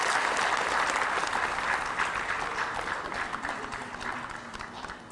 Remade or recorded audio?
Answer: recorded